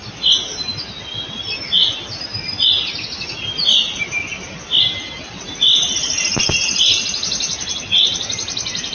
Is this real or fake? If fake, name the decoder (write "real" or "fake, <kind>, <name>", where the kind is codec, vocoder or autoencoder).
real